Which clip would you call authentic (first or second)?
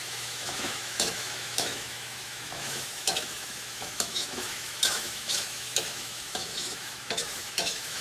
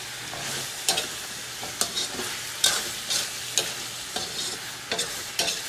second